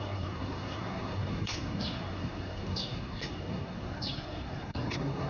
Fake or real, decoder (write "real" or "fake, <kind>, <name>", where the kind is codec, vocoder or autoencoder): fake, codec, SNAC